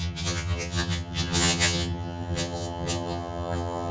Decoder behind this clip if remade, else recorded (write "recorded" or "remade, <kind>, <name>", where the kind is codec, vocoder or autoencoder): remade, vocoder, HiFi-GAN